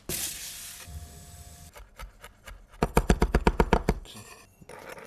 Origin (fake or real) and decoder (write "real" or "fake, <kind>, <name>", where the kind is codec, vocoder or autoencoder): real